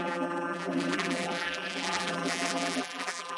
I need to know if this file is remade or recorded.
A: remade